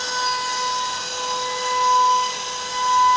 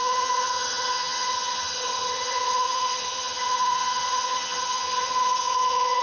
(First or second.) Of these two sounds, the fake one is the second